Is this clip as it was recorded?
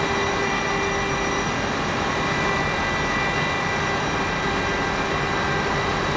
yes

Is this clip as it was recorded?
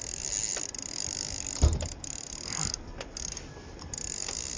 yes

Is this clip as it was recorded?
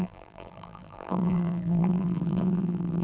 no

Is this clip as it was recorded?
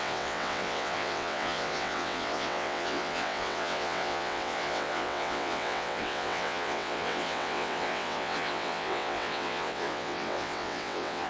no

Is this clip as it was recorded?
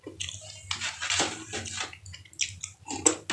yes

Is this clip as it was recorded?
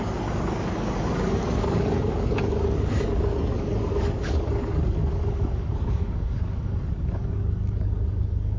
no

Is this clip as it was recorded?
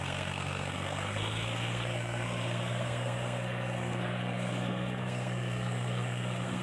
no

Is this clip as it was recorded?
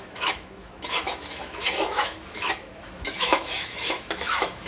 no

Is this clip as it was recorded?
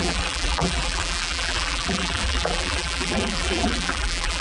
no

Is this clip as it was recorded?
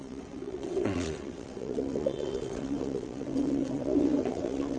no